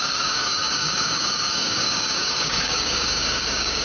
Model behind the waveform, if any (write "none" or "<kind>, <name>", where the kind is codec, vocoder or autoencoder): codec, DAC